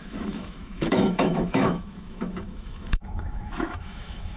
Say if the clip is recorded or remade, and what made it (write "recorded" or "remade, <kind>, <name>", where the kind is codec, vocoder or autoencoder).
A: remade, autoencoder, DAC-VAE